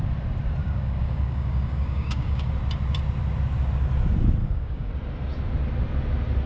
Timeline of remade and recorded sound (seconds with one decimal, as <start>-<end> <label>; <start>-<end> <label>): 0.0-0.6 recorded; 0.6-2.5 remade; 2.5-4.4 recorded; 4.4-4.9 remade; 4.9-6.5 recorded